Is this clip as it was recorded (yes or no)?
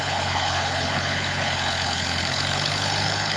no